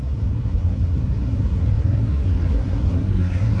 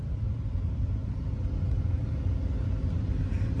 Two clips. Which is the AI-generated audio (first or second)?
first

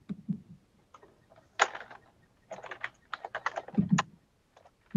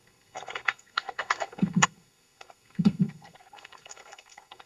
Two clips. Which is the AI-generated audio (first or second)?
second